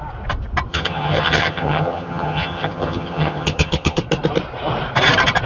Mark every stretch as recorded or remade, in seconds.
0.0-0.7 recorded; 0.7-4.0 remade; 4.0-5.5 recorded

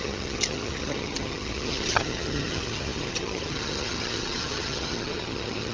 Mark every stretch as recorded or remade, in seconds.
0.0-5.7 remade